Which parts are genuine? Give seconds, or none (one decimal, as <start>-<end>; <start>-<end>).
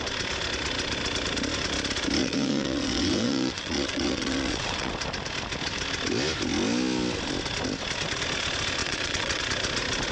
0.0-2.2; 4.9-8.8; 9.4-10.1